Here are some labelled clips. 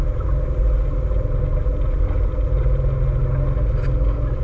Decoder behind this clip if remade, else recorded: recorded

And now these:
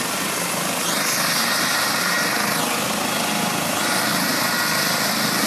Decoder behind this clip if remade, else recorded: recorded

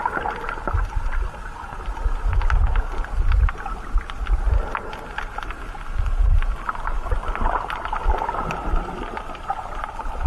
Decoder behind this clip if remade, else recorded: recorded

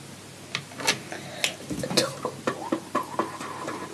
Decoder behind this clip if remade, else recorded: recorded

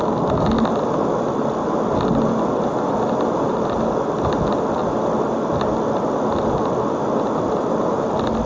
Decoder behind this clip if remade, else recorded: recorded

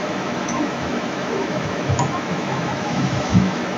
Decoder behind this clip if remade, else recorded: remade, autoencoder, DAC-VAE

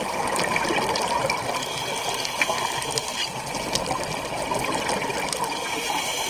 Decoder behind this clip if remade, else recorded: recorded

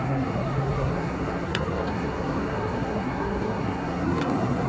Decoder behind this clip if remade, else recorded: remade, codec, SNAC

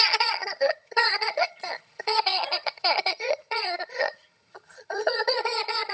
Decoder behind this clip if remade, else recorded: remade, vocoder, HiFi-GAN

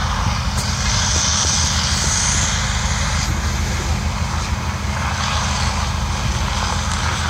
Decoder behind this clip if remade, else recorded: recorded